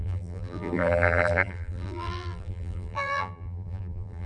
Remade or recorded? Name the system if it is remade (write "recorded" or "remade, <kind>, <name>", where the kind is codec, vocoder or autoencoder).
remade, vocoder, BigVGAN v2